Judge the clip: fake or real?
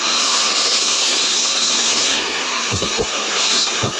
fake